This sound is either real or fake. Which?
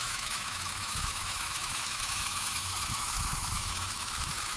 fake